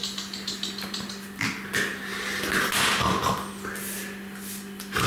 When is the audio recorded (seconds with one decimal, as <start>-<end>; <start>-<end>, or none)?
0.0-5.1